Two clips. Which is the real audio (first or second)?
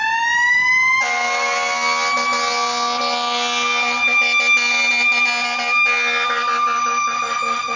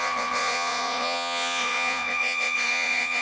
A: first